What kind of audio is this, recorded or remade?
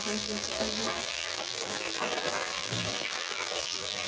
remade